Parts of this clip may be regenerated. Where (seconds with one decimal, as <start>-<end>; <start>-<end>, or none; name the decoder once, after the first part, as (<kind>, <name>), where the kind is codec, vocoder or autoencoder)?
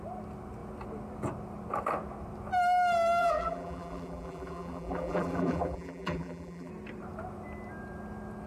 3.2-6.7 (vocoder, BigVGAN v2)